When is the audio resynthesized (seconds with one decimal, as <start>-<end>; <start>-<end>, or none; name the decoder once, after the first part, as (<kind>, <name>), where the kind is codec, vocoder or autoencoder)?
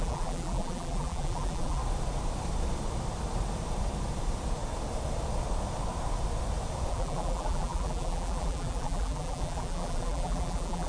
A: 0.0-1.8 (vocoder, BigVGAN v2); 6.9-10.9